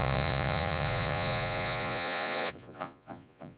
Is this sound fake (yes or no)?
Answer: yes